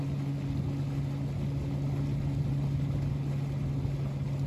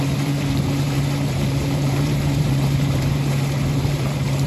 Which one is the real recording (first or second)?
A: first